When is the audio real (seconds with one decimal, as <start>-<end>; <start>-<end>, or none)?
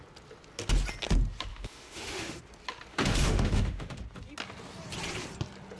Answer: 0.0-1.5; 2.4-2.9; 4.0-5.8